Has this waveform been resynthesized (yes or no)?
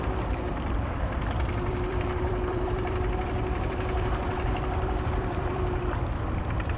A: yes